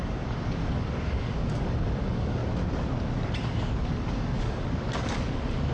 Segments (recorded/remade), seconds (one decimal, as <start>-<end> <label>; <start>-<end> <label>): 0.0-2.4 remade; 2.4-3.6 recorded; 3.6-5.7 remade